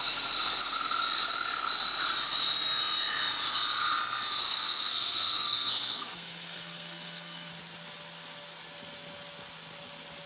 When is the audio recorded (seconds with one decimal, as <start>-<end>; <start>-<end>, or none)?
0.0-4.4; 7.5-10.3